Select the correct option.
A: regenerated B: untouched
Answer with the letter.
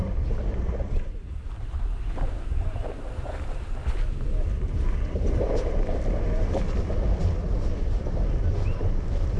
A